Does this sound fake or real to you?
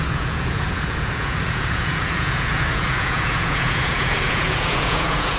fake